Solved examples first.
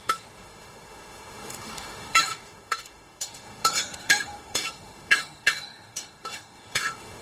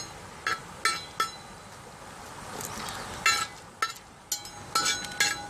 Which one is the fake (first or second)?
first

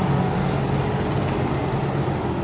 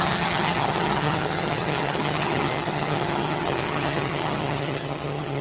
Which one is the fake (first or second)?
second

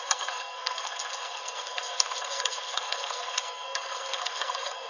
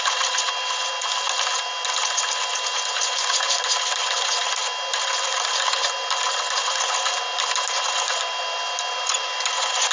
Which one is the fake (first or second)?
first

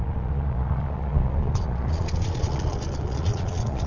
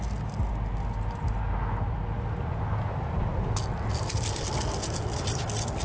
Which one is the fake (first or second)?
first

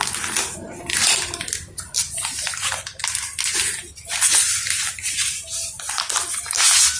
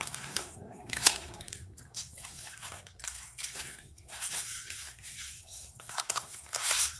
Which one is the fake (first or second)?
second